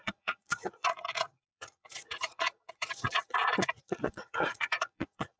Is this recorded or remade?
remade